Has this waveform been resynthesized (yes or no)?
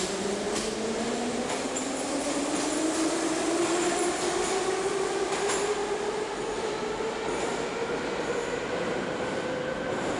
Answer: no